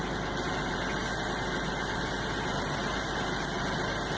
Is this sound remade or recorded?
recorded